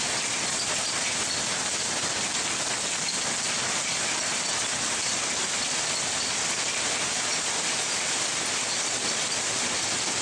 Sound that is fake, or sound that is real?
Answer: real